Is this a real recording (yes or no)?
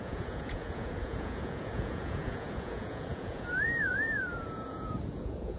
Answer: no